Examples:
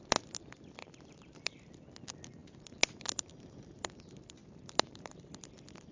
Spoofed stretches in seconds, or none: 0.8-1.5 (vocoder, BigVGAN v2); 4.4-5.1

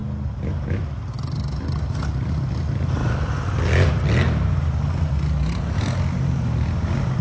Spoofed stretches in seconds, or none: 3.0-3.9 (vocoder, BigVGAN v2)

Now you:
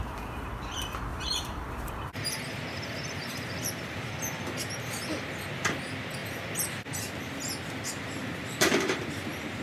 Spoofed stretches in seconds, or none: 1.1-4.1 (vocoder, BigVGAN v2); 8.2-9.0

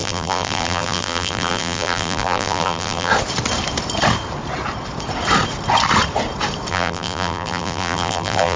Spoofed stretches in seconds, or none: 0.0-3.1 (vocoder, BigVGAN v2); 6.7-8.6

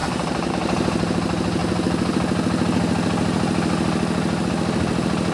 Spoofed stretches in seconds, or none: 0.0-0.5 (vocoder, BigVGAN v2)

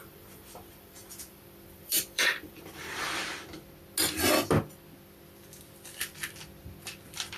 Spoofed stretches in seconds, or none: 0.0-3.2 (vocoder, BigVGAN v2)

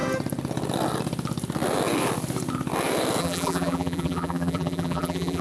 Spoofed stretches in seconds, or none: 3.2-5.4 (vocoder, BigVGAN v2)

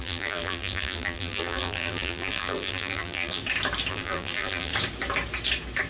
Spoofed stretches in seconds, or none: 0.0-3.4 (vocoder, BigVGAN v2); 3.9-4.7